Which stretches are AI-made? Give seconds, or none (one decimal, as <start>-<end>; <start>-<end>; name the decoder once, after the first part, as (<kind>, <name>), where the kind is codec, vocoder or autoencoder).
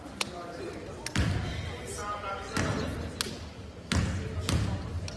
none